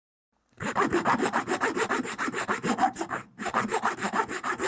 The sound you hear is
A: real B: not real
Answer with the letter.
B